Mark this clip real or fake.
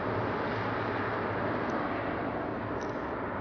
real